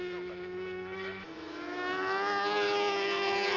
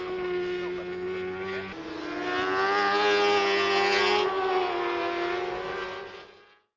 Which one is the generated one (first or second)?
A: first